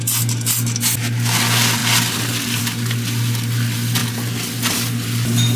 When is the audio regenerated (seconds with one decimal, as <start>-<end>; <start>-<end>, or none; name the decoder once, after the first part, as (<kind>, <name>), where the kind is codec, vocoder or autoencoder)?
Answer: none